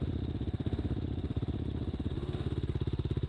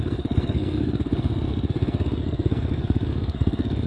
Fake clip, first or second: second